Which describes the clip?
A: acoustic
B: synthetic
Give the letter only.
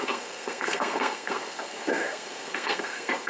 B